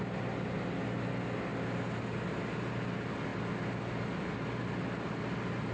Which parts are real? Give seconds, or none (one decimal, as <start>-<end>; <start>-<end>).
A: 0.0-5.7